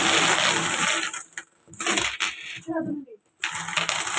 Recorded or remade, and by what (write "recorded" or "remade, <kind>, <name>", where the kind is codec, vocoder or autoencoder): recorded